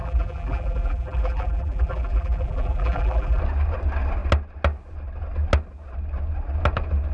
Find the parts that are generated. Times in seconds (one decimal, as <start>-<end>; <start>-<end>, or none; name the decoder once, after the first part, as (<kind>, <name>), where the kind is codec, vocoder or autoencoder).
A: 0.0-3.4 (vocoder, BigVGAN v2)